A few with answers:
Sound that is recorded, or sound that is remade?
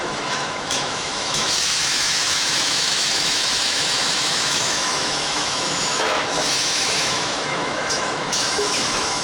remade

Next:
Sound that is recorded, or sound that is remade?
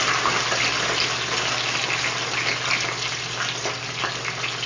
recorded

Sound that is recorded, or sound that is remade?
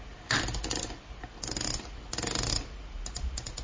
recorded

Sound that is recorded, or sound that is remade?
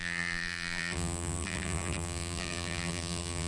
remade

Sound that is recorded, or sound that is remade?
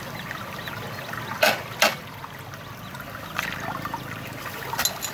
recorded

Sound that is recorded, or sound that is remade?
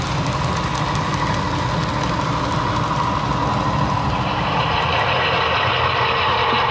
recorded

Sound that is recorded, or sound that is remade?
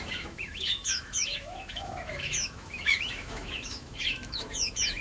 remade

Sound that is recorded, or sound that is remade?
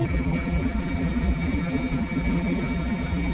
remade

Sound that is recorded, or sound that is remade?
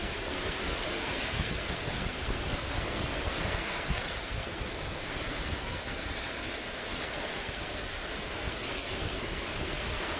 remade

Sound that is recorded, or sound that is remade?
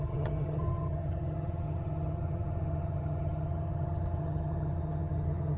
remade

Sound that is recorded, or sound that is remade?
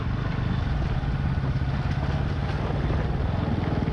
recorded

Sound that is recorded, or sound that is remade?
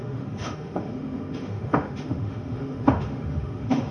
remade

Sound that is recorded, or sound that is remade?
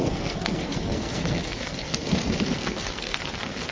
remade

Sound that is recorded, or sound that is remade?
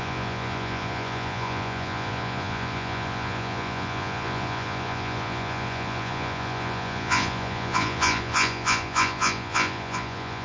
remade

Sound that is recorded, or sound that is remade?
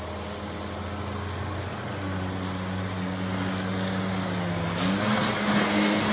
recorded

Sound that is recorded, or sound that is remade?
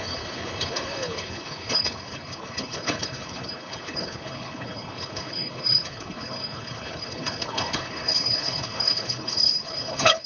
remade